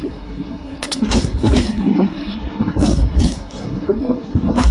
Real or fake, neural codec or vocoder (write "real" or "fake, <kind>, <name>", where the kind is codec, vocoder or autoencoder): fake, codec, SNAC